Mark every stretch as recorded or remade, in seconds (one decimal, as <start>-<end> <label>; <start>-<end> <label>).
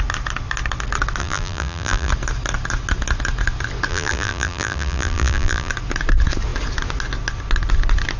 0.0-1.2 recorded; 1.2-2.1 remade; 2.1-3.9 recorded; 3.9-5.7 remade; 5.7-8.2 recorded